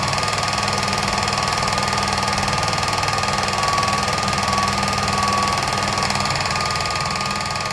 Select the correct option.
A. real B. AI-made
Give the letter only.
A